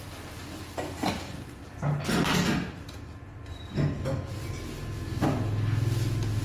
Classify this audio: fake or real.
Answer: real